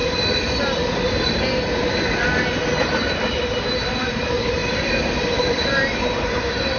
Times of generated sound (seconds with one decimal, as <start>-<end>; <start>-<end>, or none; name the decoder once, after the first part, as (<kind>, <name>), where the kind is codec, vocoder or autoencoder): 0.0-1.8 (vocoder, BigVGAN v2); 3.2-6.8